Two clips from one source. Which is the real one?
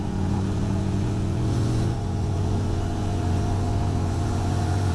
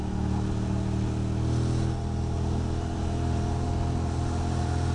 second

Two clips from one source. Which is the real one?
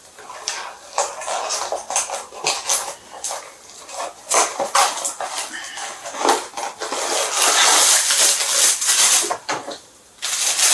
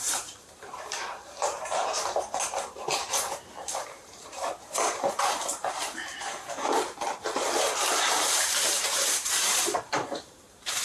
first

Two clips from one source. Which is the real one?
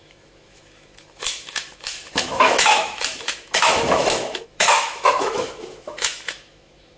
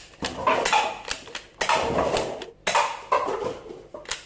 second